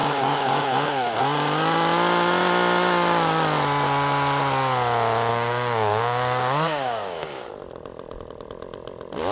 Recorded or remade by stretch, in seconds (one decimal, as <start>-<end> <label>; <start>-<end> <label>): 0.0-1.2 remade; 1.2-5.3 recorded; 5.3-7.5 remade; 7.5-9.3 recorded

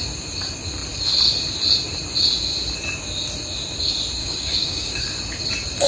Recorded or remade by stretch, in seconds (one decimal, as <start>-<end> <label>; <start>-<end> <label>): 0.0-4.2 recorded; 4.2-5.0 remade; 5.0-5.9 recorded

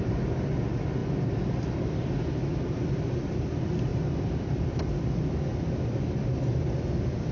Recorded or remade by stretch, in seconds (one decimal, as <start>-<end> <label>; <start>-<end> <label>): 0.0-7.3 recorded

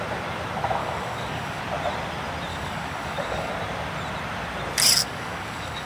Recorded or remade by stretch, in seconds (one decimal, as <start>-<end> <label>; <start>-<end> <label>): 0.0-0.8 recorded; 0.8-1.6 remade; 1.6-2.5 recorded; 2.5-3.5 remade; 3.5-5.0 recorded; 5.0-5.9 remade

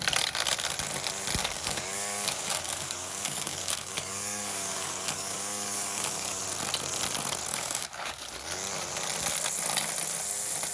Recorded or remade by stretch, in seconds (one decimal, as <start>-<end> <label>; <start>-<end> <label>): 0.0-1.4 recorded; 1.4-6.4 remade; 6.4-7.5 recorded; 7.5-8.1 remade; 8.1-10.7 recorded

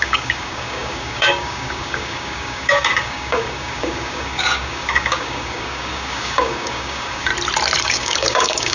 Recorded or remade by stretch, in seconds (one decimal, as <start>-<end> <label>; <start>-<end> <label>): 0.0-7.3 remade; 7.3-7.8 recorded; 7.8-8.7 remade

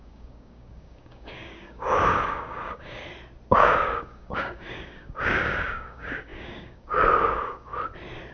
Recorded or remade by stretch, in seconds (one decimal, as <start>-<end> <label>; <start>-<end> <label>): 0.0-3.0 remade; 3.0-3.5 recorded; 3.5-7.7 remade; 7.7-8.3 recorded